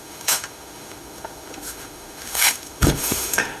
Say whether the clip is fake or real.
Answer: fake